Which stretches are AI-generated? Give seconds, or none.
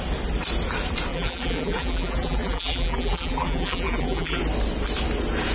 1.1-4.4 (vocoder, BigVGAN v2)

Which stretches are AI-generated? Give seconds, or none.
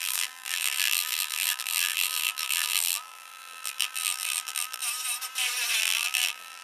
0.0-4.8 (vocoder, BigVGAN v2); 5.8-6.6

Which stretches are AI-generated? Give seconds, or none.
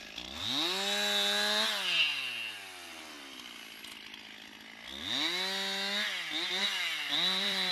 6.6-7.7 (vocoder, BigVGAN v2)